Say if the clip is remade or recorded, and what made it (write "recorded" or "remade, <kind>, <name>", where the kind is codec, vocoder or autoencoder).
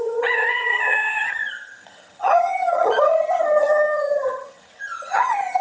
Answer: remade, vocoder, HiFi-GAN